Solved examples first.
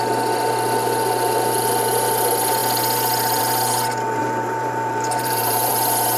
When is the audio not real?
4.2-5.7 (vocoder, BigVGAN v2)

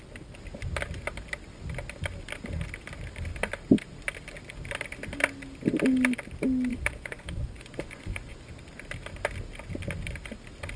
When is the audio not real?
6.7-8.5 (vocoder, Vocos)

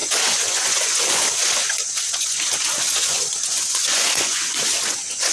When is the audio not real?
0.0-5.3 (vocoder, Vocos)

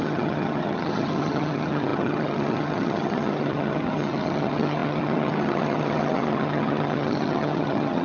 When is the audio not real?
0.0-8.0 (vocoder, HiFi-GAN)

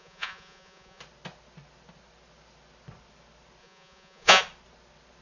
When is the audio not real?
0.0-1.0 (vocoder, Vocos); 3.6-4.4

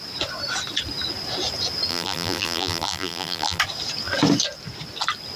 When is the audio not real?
1.9-3.6 (vocoder, BigVGAN v2)